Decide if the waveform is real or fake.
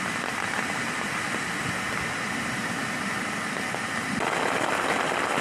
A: real